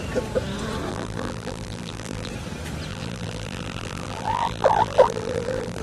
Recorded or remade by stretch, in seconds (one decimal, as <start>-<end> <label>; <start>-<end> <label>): 0.0-0.9 recorded; 0.9-2.3 remade; 2.3-2.9 recorded; 2.9-5.8 remade